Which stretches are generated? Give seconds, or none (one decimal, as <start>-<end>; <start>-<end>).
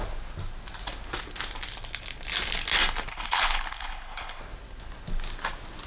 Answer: 3.1-4.4